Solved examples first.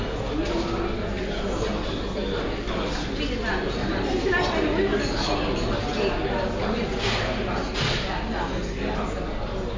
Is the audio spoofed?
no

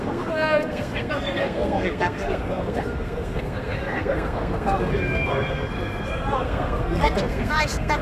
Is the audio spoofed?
yes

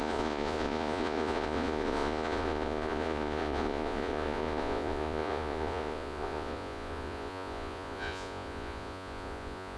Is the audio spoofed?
yes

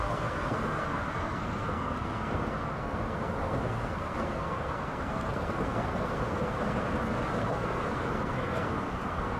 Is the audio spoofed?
yes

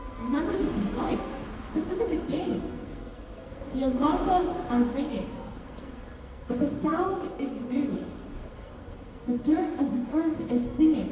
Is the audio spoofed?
yes